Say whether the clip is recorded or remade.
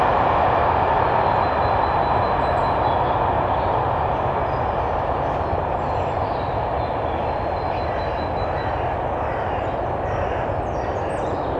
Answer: recorded